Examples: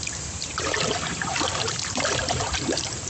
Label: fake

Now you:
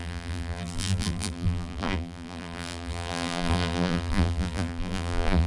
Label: fake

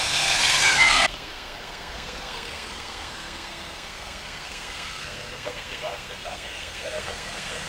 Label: fake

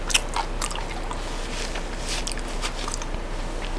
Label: real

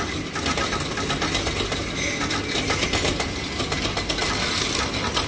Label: real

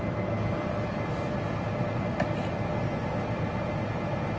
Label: real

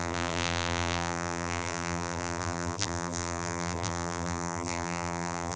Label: fake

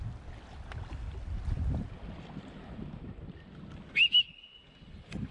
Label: real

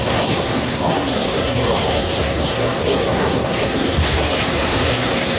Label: fake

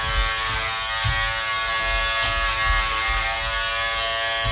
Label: real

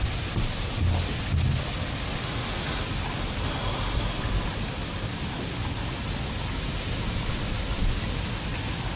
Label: real